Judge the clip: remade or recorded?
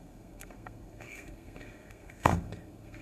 remade